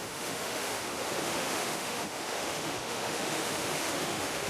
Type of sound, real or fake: fake